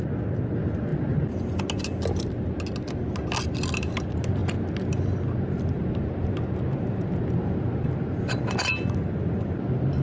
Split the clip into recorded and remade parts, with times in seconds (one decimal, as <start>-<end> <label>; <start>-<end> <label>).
0.0-10.0 recorded